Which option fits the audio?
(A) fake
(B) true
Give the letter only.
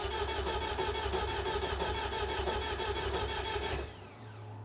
B